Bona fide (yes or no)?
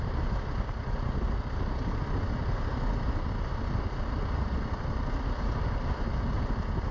yes